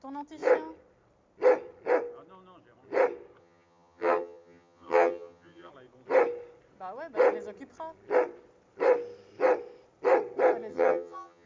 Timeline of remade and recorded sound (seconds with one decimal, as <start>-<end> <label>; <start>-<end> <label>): 0.0-3.4 recorded; 3.4-5.7 remade; 5.7-10.7 recorded; 10.7-11.5 remade

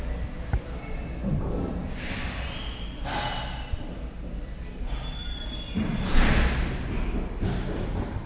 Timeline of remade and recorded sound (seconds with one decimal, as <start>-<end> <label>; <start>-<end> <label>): 0.0-8.3 recorded

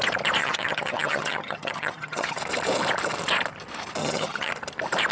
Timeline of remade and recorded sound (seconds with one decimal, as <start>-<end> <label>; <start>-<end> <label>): 0.0-0.4 recorded; 0.4-2.4 remade; 2.4-4.0 recorded; 4.0-4.5 remade; 4.5-5.1 recorded

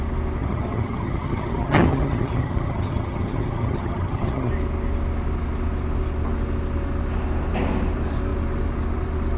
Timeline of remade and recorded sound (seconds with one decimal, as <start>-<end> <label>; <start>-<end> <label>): 0.0-0.4 recorded; 0.4-4.5 remade; 4.5-9.4 recorded

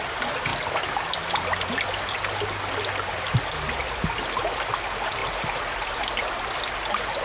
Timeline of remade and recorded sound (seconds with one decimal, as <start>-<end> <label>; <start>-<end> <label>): 0.0-7.2 recorded